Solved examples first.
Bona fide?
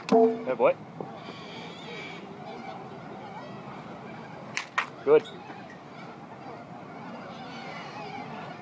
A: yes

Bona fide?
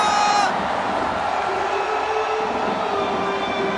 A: yes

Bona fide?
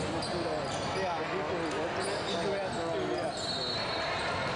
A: yes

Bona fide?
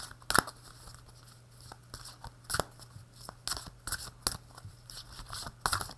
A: yes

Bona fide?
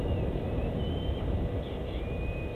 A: yes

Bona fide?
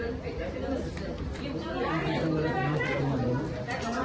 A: yes